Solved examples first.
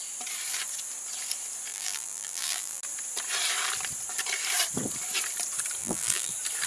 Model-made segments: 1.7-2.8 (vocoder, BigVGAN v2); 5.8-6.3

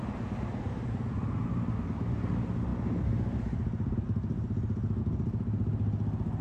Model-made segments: none

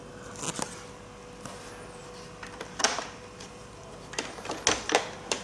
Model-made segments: 2.0-3.8 (vocoder, BigVGAN v2)

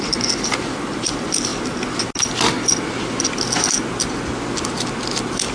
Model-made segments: none

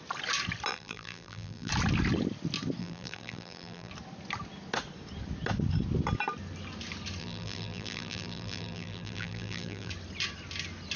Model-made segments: 0.7-1.7 (vocoder, BigVGAN v2); 2.8-3.9; 7.2-9.9

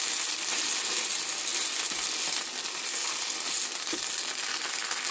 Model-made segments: none

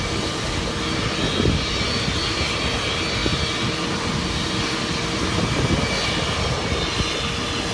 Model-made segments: 3.2-6.1 (vocoder, BigVGAN v2)